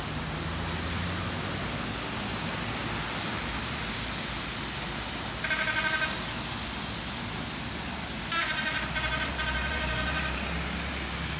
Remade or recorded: recorded